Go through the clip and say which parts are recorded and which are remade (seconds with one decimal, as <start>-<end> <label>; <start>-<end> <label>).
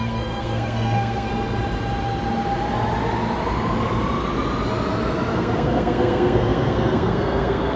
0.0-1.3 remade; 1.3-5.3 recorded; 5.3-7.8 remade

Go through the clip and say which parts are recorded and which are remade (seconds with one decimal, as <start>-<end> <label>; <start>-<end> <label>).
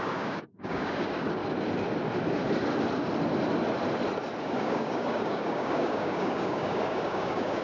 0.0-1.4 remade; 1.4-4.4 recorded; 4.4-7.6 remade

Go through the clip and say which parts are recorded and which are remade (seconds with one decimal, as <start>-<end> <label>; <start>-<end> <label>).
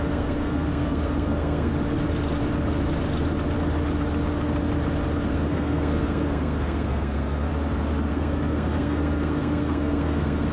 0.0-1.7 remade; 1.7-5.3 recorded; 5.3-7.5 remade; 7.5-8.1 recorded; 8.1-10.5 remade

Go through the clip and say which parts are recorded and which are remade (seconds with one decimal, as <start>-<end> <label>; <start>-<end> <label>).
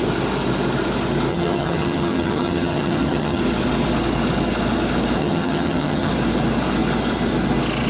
0.0-1.3 recorded; 1.3-3.4 remade; 3.4-5.2 recorded; 5.2-6.1 remade; 6.1-7.9 recorded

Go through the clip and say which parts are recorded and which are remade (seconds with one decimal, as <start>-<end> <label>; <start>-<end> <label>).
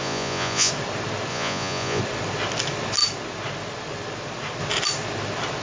0.0-0.7 remade; 0.7-1.3 recorded; 1.3-2.0 remade; 2.0-5.6 recorded